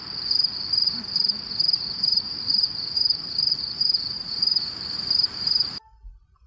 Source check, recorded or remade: remade